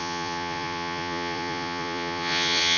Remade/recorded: remade